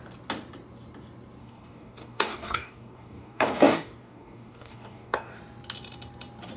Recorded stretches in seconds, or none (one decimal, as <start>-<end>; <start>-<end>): 0.0-1.4; 5.4-6.6